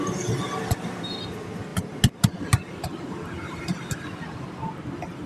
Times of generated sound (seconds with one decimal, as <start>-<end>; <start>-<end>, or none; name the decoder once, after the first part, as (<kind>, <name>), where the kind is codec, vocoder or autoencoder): none